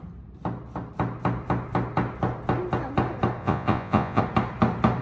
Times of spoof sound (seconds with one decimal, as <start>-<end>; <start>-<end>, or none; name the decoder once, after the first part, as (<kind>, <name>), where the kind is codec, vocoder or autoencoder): 3.4-4.2 (vocoder, Vocos)